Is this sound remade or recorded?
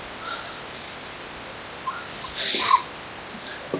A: recorded